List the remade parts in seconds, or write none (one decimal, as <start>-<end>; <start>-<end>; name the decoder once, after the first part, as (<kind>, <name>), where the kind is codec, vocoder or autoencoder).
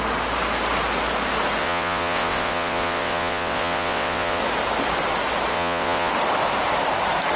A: 1.6-4.4 (vocoder, WaveNeXt); 5.5-6.1